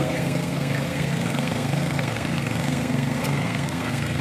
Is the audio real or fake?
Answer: fake